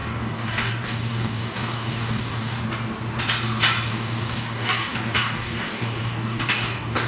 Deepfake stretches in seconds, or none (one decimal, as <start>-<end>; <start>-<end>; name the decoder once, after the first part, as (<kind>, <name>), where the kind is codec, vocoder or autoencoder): 0.0-2.6 (codec, DAC); 3.9-7.1